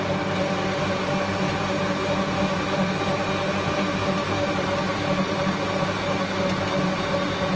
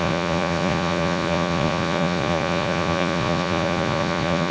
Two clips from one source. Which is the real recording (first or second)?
first